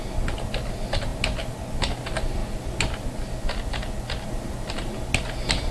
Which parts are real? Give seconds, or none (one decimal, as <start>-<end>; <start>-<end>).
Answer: 0.0-5.7